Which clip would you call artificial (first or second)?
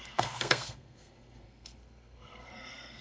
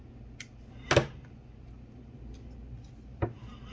first